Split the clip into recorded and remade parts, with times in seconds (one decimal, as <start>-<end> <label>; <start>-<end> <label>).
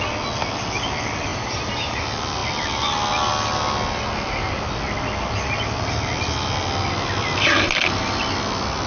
0.0-1.3 recorded; 1.3-2.0 remade; 2.0-8.9 recorded